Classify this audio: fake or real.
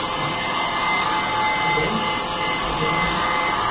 real